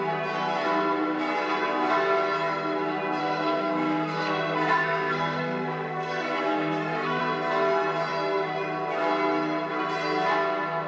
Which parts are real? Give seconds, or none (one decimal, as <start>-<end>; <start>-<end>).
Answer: 0.0-3.2; 7.2-10.9